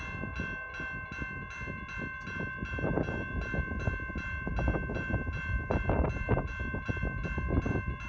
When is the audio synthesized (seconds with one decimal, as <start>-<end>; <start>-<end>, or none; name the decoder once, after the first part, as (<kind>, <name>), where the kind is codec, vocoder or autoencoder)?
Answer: none